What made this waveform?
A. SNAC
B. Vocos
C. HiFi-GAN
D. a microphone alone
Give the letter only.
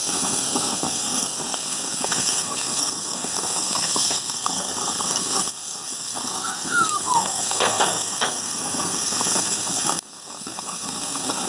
A